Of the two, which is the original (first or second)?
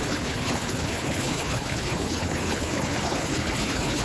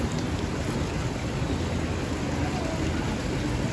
second